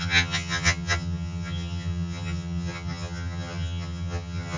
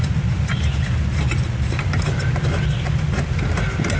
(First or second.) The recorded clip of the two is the second